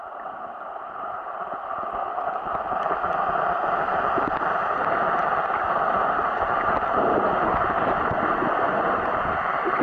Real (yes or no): yes